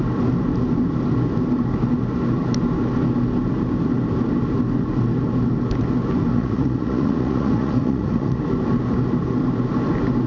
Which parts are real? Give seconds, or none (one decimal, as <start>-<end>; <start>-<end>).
0.0-6.3; 8.4-10.3